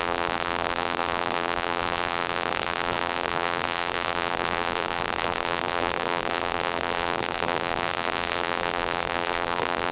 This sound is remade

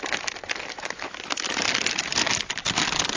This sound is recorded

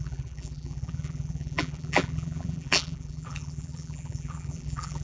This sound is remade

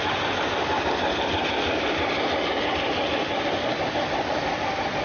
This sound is recorded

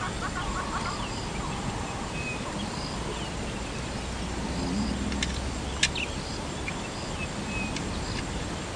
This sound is recorded